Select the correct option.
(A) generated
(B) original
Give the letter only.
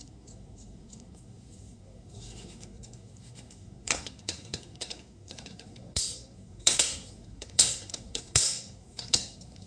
A